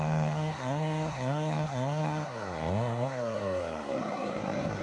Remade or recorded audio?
remade